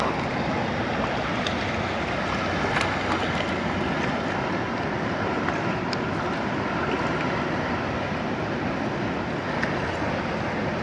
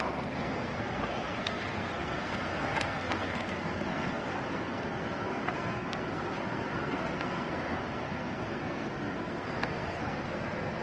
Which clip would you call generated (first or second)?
second